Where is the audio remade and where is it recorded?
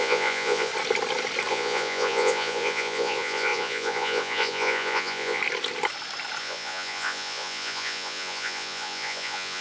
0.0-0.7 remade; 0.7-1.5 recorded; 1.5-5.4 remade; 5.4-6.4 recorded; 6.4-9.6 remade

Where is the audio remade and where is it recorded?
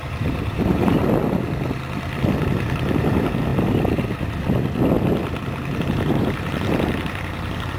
0.0-1.0 remade; 1.0-2.5 recorded; 2.5-3.5 remade; 3.5-5.8 recorded; 5.8-7.8 remade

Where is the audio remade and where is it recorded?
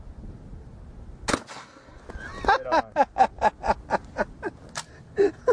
0.0-1.5 recorded; 1.5-2.0 remade; 2.0-5.5 recorded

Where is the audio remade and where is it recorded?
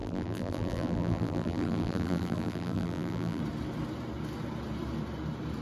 0.0-3.4 remade; 3.4-5.6 recorded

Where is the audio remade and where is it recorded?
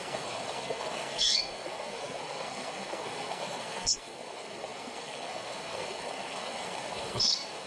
0.0-7.7 remade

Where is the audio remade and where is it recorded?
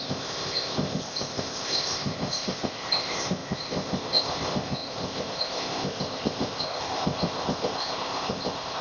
0.0-8.8 remade